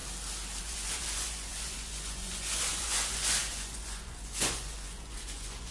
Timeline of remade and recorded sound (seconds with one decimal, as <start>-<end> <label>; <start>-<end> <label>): 0.0-0.6 recorded; 0.6-5.7 remade